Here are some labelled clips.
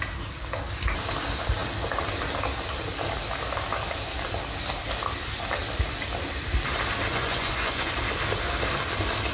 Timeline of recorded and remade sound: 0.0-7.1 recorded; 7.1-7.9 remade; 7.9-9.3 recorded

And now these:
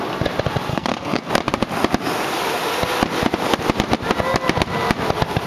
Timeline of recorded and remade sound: 0.0-0.7 recorded; 0.7-1.3 remade; 1.3-5.5 recorded

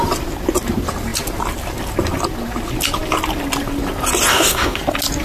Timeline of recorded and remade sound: 0.0-4.3 recorded; 4.3-4.8 remade; 4.8-5.2 recorded

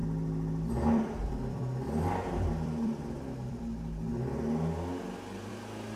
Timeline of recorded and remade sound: 0.0-3.6 remade; 3.6-6.0 recorded

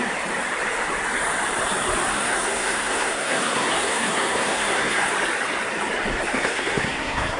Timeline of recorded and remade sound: 0.0-2.1 recorded; 2.1-5.1 remade; 5.1-6.1 recorded; 6.1-7.4 remade

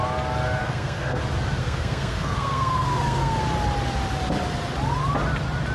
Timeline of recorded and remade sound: 0.0-0.6 recorded; 0.6-1.2 remade; 1.2-1.6 recorded; 1.6-3.4 remade; 3.4-5.7 recorded

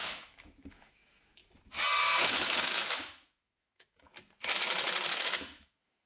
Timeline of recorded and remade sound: 0.0-1.4 remade; 1.4-2.0 recorded; 2.0-4.1 remade; 4.1-5.1 recorded; 5.1-6.1 remade

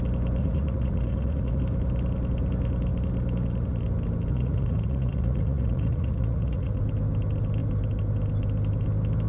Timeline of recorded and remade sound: 0.0-0.4 recorded; 0.4-1.6 remade; 1.6-4.3 recorded; 4.3-6.8 remade; 6.8-9.3 recorded